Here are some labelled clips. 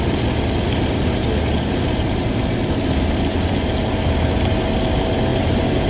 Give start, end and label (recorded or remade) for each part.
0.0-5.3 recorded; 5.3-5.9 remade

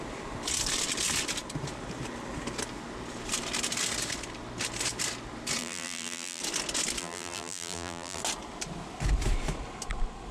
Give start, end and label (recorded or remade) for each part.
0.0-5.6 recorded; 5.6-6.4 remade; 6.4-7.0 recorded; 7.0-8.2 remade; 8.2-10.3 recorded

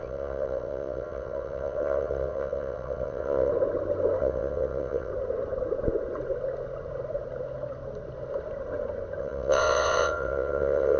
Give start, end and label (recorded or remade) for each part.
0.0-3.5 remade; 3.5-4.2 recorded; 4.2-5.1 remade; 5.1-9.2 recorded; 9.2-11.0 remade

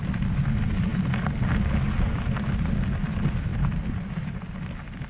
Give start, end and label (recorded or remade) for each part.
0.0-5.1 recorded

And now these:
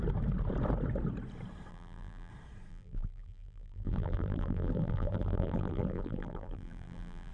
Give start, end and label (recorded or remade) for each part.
0.0-1.7 recorded; 1.7-2.3 remade; 2.3-2.7 recorded; 2.7-7.3 remade

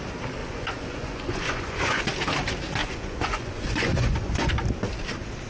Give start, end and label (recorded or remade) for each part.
0.0-0.4 recorded; 0.4-2.1 remade; 2.1-2.8 recorded; 2.8-4.5 remade; 4.5-5.5 recorded

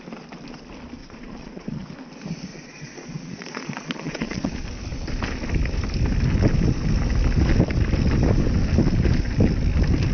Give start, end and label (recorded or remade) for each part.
0.0-1.0 recorded; 1.0-1.9 remade; 1.9-2.5 recorded; 2.5-4.5 remade; 4.5-10.1 recorded